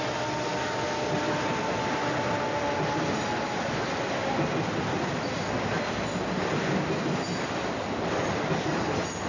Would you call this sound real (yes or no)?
yes